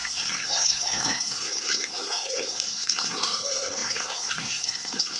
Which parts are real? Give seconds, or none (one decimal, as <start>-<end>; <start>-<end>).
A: none